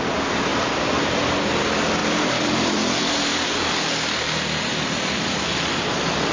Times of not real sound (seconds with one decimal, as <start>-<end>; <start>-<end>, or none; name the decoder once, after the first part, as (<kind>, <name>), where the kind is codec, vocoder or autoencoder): 0.5-1.0 (vocoder, BigVGAN v2); 2.0-5.2